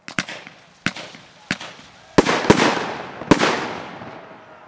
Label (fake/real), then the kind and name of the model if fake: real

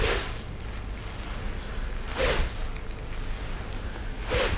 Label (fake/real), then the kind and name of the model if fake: real